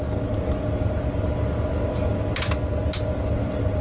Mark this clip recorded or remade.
recorded